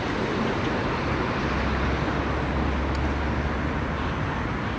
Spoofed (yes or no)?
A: no